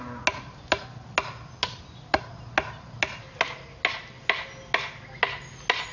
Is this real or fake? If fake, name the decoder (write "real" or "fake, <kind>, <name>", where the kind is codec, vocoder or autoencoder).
real